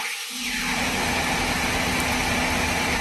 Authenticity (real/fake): real